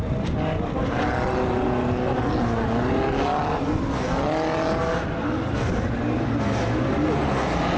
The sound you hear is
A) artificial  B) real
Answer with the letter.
B